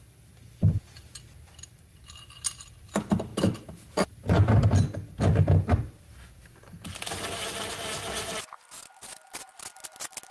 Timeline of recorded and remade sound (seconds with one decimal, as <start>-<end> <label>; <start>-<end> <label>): 0.0-10.3 recorded